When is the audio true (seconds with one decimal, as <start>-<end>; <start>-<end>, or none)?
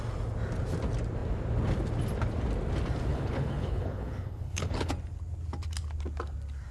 0.0-3.1; 4.9-6.7